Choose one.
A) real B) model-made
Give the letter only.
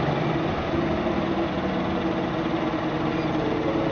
A